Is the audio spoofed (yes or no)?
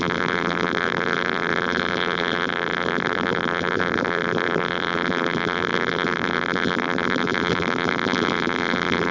yes